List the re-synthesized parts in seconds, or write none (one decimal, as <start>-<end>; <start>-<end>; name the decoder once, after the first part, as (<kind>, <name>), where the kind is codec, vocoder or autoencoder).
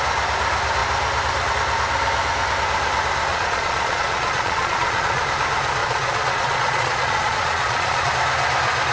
3.3-5.2 (vocoder, Vocos); 5.8-8.1